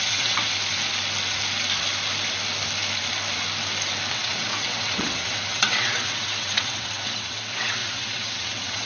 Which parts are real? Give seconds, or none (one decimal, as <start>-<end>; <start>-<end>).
0.5-4.1